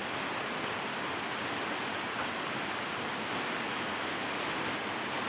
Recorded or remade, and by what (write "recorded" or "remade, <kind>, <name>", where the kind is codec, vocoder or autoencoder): recorded